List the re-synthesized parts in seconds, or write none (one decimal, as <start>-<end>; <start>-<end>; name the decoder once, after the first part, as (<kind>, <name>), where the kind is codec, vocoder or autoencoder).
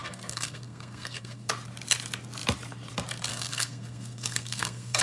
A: 0.0-1.5 (codec, SNAC); 3.3-5.0